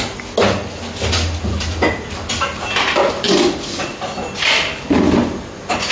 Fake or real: real